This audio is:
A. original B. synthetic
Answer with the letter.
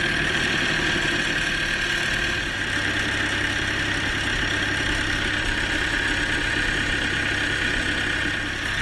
A